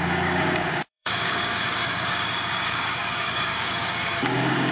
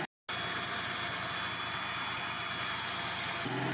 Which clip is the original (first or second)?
second